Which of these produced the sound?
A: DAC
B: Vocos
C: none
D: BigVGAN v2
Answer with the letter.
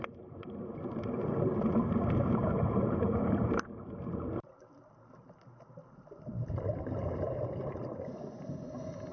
D